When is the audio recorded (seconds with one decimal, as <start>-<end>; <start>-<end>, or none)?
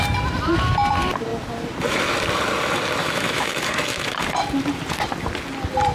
0.0-3.0; 4.2-5.9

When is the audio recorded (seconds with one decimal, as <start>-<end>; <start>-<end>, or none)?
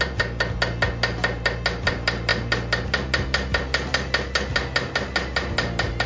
0.0-6.1